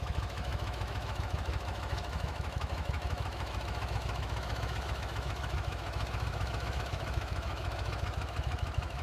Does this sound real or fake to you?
fake